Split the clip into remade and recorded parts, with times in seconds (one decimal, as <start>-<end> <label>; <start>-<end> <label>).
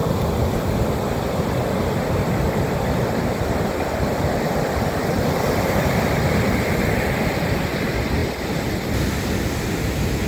0.0-10.3 recorded